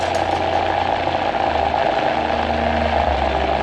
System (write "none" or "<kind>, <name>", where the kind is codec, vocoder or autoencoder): none